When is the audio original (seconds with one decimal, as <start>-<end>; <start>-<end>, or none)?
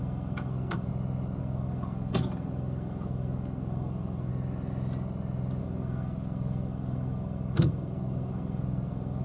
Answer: 0.9-1.4; 4.3-5.6